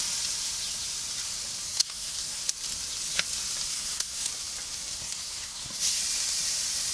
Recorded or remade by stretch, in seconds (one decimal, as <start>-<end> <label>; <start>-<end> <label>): 0.0-1.7 recorded; 1.7-2.4 remade; 2.4-3.7 recorded; 3.7-4.3 remade; 4.3-4.9 recorded; 4.9-6.0 remade; 6.0-6.9 recorded